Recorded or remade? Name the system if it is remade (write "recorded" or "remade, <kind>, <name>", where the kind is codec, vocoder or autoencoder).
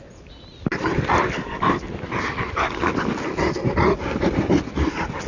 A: recorded